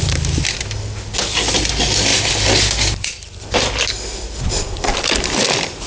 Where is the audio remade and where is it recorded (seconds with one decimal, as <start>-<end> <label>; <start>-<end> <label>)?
0.0-5.9 recorded